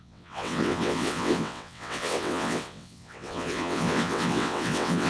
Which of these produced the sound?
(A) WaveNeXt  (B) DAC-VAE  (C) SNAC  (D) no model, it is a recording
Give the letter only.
A